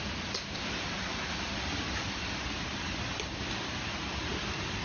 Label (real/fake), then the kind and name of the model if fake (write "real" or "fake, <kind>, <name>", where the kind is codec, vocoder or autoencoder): real